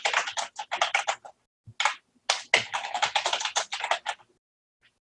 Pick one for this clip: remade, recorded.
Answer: recorded